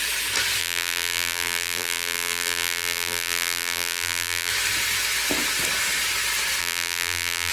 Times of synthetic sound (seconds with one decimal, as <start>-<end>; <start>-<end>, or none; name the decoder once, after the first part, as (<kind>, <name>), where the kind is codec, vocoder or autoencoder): 0.6-4.5 (vocoder, BigVGAN v2); 6.6-7.5

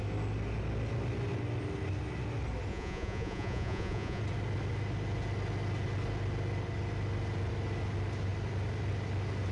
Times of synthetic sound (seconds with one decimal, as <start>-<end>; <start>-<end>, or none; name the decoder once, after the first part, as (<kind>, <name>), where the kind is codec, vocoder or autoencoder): 2.7-4.2 (vocoder, Vocos)

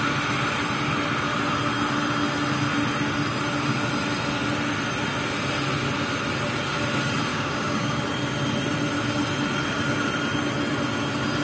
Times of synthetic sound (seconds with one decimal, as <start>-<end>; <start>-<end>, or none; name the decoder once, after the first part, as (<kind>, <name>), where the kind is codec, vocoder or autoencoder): 7.3-8.0 (codec, DAC)

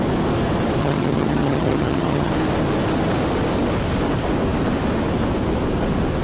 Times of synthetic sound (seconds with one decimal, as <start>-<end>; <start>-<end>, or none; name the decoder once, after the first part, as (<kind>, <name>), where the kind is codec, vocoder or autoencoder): 0.8-2.3 (vocoder, HiFi-GAN)